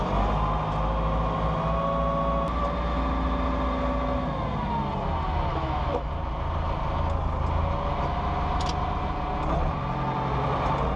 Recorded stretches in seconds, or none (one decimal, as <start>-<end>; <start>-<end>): 0.0-5.5; 6.1-11.0